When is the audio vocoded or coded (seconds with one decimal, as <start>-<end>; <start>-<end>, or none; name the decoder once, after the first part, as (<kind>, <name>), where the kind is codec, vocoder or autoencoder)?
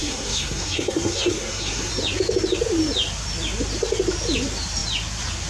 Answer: 0.0-1.9 (codec, SNAC)